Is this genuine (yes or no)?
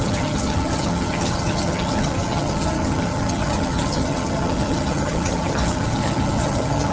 no